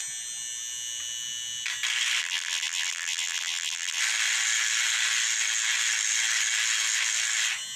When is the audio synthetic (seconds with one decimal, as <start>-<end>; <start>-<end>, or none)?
2.2-4.0